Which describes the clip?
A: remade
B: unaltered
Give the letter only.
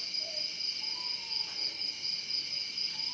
B